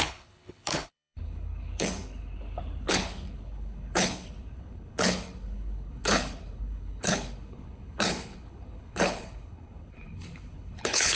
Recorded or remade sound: remade